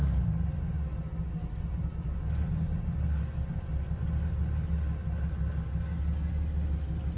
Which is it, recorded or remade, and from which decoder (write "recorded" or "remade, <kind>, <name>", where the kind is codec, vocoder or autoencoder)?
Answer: recorded